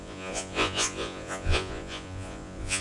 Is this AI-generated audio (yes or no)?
yes